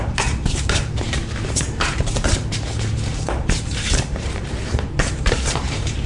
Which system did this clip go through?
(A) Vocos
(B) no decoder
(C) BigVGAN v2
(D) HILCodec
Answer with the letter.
C